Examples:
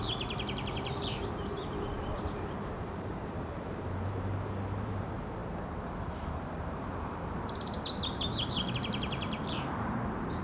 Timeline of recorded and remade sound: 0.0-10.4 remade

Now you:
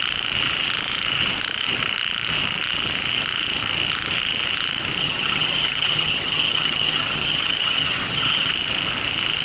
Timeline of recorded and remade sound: 0.0-5.0 recorded; 5.0-8.5 remade; 8.5-9.4 recorded